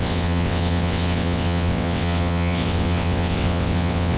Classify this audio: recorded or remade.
remade